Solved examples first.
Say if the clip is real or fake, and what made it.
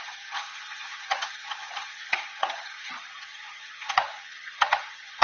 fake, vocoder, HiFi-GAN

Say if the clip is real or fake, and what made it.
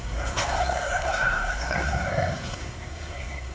fake, codec, SNAC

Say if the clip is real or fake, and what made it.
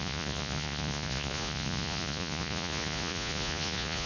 fake, vocoder, Vocos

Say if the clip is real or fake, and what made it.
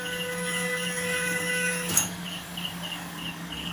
fake, codec, DAC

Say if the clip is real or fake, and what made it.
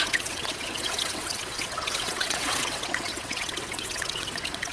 fake, vocoder, WaveNeXt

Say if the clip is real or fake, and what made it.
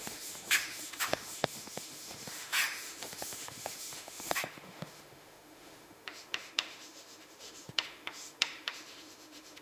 fake, autoencoder, DAC-VAE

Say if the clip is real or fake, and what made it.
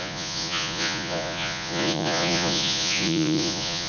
fake, vocoder, Vocos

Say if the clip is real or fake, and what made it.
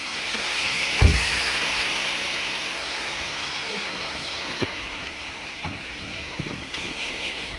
fake, codec, SNAC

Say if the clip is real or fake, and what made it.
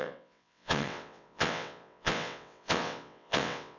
fake, vocoder, WaveNeXt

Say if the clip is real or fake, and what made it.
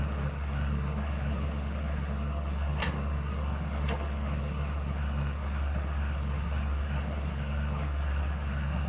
fake, codec, SNAC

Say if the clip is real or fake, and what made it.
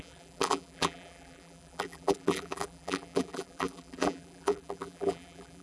fake, vocoder, BigVGAN v2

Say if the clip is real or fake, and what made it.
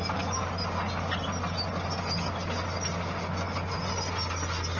real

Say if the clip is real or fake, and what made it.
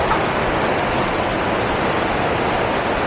real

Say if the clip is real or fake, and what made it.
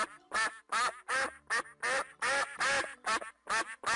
real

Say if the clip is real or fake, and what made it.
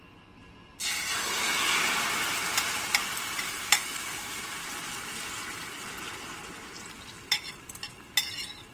real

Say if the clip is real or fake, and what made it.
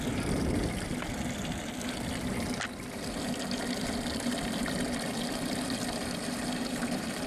fake, vocoder, BigVGAN v2